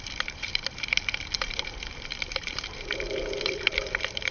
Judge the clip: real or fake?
fake